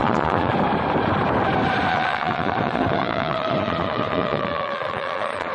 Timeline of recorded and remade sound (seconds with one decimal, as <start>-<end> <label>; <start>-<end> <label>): 0.0-0.5 remade; 0.5-1.9 recorded; 1.9-5.5 remade